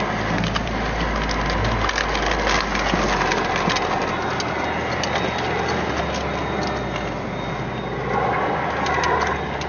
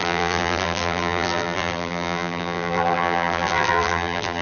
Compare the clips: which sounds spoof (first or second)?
second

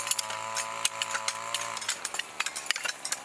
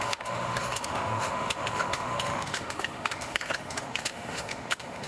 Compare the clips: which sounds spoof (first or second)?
second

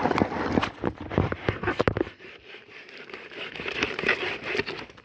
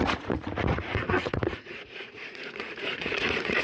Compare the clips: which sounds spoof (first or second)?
second